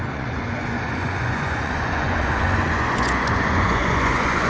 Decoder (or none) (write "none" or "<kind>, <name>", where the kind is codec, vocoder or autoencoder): vocoder, Vocos